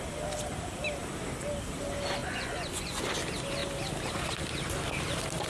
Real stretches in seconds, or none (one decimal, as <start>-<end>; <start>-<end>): 0.0-2.2; 3.0-5.5